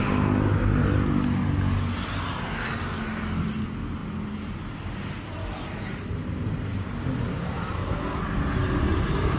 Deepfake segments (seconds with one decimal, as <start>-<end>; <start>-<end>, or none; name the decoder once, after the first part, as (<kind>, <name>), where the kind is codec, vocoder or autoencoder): none